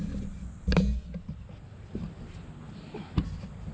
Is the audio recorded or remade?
recorded